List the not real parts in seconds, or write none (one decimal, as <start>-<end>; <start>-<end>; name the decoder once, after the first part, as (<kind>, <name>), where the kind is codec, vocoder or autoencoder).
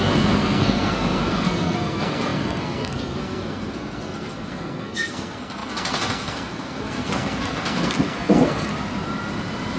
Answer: 0.0-8.7 (codec, SNAC)